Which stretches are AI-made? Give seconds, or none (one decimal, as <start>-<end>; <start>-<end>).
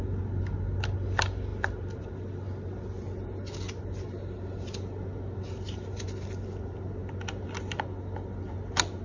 none